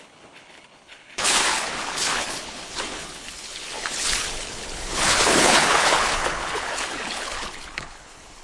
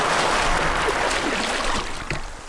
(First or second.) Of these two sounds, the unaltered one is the second